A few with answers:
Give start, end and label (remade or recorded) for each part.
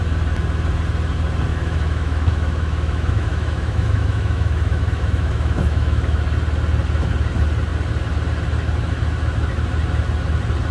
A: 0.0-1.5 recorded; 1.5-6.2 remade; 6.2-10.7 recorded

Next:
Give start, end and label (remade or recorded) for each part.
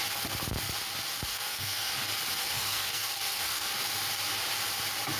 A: 0.0-1.3 recorded; 1.3-1.9 remade; 1.9-2.4 recorded; 2.4-3.7 remade; 3.7-5.2 recorded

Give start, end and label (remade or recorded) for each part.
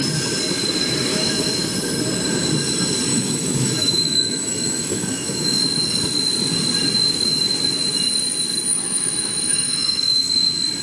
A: 0.0-1.1 recorded; 1.1-1.7 remade; 1.7-3.1 recorded; 3.1-5.6 remade; 5.6-8.7 recorded; 8.7-10.3 remade; 10.3-10.8 recorded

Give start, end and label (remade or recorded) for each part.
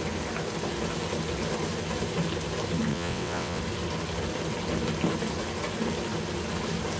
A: 0.0-2.9 recorded; 2.9-3.6 remade; 3.6-7.0 recorded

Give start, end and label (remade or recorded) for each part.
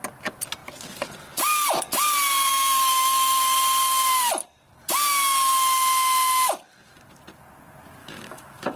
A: 0.0-2.5 recorded; 2.5-3.4 remade; 3.4-8.0 recorded; 8.0-8.8 remade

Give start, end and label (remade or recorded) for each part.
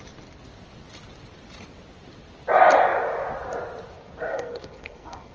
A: 0.0-4.3 recorded; 4.3-5.3 remade